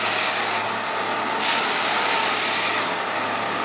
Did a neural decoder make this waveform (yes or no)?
no